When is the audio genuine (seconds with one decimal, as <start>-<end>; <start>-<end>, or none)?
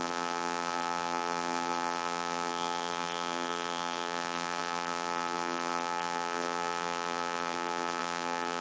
none